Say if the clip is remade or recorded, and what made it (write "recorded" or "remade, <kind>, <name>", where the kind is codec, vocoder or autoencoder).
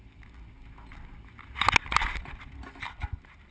recorded